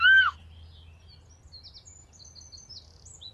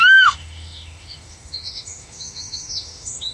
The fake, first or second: second